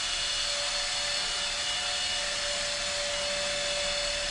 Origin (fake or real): real